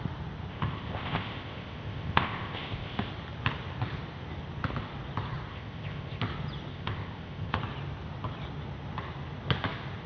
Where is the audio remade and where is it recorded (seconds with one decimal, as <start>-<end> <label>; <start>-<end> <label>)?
0.0-0.5 recorded; 0.5-3.1 remade; 3.1-5.5 recorded; 5.5-6.2 remade; 6.2-6.7 recorded; 6.7-7.6 remade; 7.6-10.1 recorded